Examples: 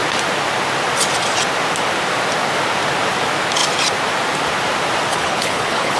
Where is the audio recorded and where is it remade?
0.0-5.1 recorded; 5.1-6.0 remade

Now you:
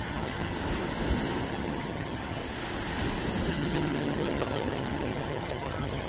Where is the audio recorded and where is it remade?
0.0-0.5 remade; 0.5-1.5 recorded; 1.5-2.4 remade; 2.4-3.5 recorded; 3.5-6.1 remade

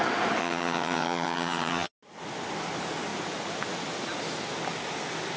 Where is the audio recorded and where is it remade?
0.0-0.4 recorded; 0.4-1.9 remade; 1.9-5.4 recorded

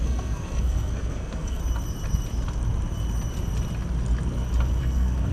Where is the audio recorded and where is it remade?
0.0-1.6 remade; 1.6-4.8 recorded; 4.8-5.3 remade

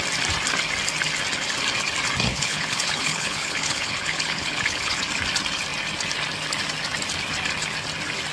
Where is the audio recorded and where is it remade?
0.0-2.3 recorded; 2.3-5.0 remade; 5.0-8.3 recorded

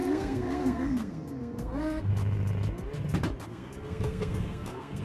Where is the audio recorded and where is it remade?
0.0-2.1 remade; 2.1-3.5 recorded; 3.5-5.0 remade

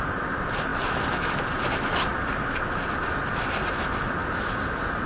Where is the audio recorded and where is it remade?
0.0-0.7 remade; 0.7-1.4 recorded; 1.4-2.1 remade; 2.1-5.1 recorded